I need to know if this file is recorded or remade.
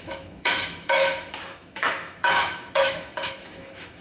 remade